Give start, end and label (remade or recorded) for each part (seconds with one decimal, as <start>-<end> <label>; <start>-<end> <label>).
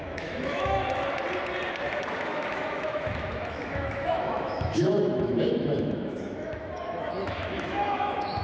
0.0-0.8 remade; 0.8-2.0 recorded; 2.0-8.4 remade